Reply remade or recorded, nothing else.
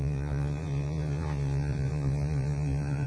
remade